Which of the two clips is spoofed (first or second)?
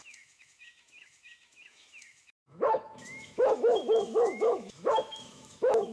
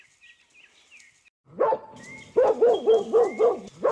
first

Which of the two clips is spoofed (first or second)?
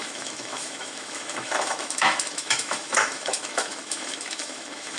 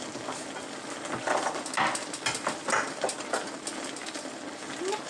first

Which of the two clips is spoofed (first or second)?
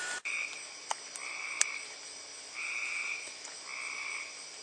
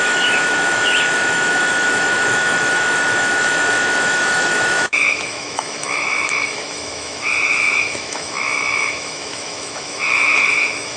second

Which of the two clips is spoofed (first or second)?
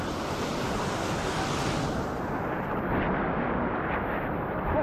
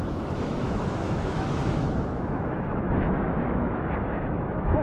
second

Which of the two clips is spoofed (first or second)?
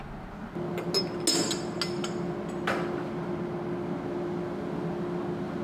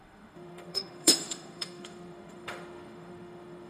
second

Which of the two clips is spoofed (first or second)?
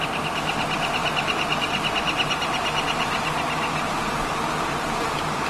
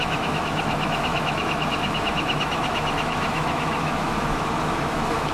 second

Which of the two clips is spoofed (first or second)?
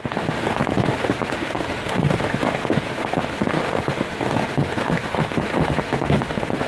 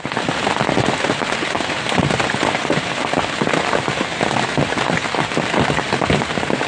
first